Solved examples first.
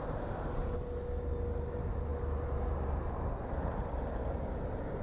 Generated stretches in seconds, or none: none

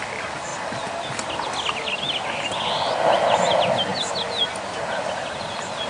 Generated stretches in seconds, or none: none

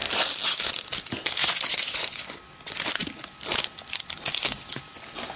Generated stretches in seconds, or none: 1.4-2.4 (vocoder, Vocos)

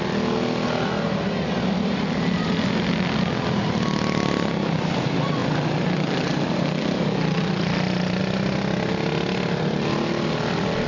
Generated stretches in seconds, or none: none

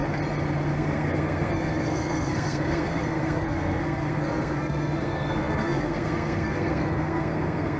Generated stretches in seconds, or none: 0.7-7.8 (codec, SNAC)

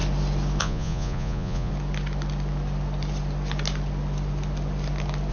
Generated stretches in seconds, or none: 0.6-1.7 (vocoder, Vocos)